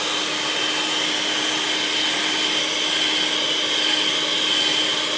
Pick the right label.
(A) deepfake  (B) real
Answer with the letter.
B